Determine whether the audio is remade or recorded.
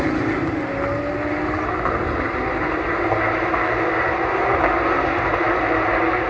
recorded